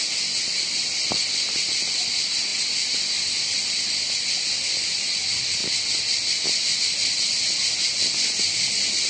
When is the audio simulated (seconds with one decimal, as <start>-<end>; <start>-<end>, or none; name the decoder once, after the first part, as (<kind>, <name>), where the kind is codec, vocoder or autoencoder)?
none